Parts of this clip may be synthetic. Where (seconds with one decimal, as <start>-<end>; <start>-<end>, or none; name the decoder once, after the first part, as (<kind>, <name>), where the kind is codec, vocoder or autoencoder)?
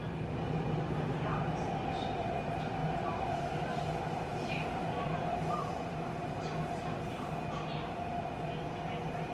4.3-6.1 (vocoder, BigVGAN v2)